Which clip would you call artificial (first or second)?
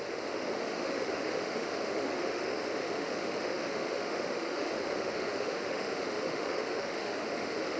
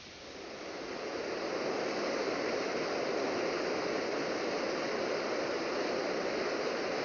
first